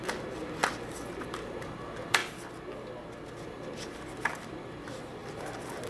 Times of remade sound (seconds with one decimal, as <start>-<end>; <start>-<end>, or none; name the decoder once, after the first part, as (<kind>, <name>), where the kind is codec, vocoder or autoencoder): 0.0-0.6 (vocoder, BigVGAN v2); 1.2-2.2; 3.4-5.9